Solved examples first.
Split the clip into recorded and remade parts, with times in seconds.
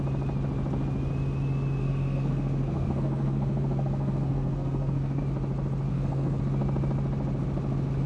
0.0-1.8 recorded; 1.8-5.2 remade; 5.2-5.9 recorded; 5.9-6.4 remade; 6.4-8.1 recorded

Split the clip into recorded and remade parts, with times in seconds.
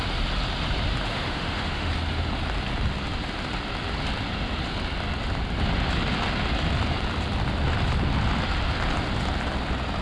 0.0-1.1 recorded; 1.1-1.9 remade; 1.9-10.0 recorded